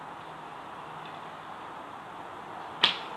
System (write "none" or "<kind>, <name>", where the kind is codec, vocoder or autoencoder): none